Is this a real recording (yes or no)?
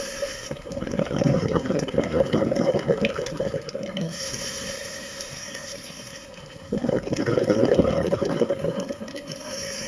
no